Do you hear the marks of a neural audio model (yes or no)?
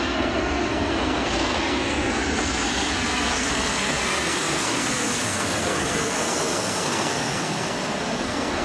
yes